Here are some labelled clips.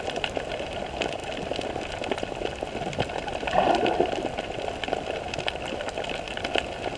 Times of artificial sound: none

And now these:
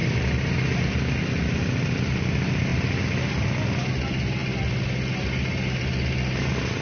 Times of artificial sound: none

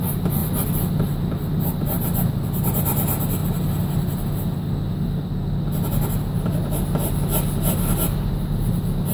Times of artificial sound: 0.0-3.4 (vocoder, BigVGAN v2); 8.3-9.1

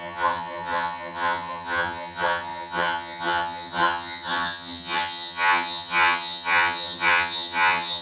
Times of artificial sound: 0.0-8.0 (vocoder, HiFi-GAN)

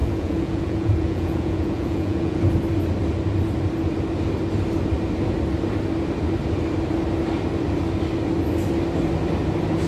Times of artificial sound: 0.0-2.4 (vocoder, Vocos)